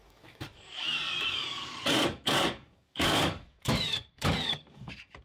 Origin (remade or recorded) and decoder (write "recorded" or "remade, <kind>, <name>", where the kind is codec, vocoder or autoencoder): remade, codec, DAC